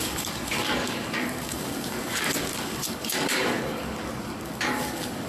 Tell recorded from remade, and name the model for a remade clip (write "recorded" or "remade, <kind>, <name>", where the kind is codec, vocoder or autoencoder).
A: remade, codec, DAC